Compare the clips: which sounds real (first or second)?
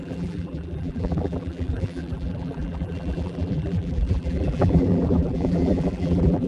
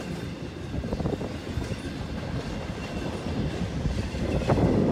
second